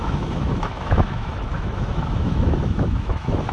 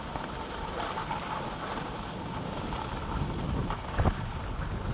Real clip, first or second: second